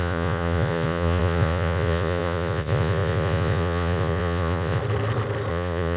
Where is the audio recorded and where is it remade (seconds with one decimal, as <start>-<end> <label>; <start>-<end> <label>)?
0.0-4.8 remade; 4.8-5.5 recorded; 5.5-6.0 remade